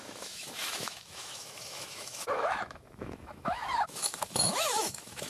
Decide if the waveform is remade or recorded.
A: remade